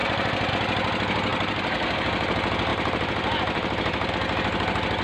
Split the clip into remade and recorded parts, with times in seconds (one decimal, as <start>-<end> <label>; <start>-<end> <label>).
0.0-0.5 remade; 0.5-1.3 recorded; 1.3-2.1 remade; 2.1-2.7 recorded; 2.7-4.1 remade; 4.1-5.0 recorded